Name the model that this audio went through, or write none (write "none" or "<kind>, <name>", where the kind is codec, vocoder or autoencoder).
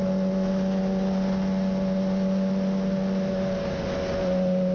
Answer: none